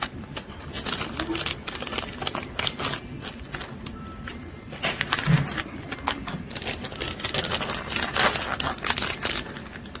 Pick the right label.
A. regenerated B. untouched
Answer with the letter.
B